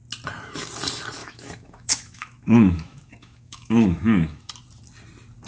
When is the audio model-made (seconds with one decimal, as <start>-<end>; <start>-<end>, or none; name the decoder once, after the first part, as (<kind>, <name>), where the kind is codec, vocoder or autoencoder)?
1.2-4.5 (autoencoder, DAC-VAE)